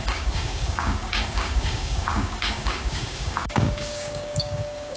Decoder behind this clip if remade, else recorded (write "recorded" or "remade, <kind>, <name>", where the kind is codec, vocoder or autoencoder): remade, codec, DAC